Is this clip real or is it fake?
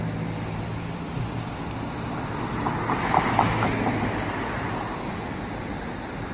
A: real